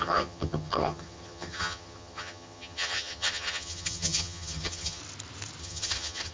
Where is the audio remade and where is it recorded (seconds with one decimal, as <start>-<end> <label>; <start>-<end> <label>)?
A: 0.0-5.0 remade; 5.0-5.6 recorded; 5.6-6.3 remade